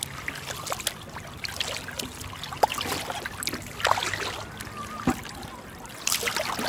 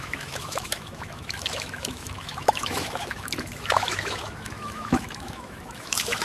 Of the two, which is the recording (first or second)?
first